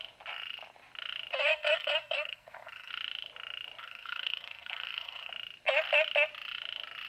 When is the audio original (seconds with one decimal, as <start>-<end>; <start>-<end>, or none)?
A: 0.0-1.5; 2.9-3.8; 5.3-7.1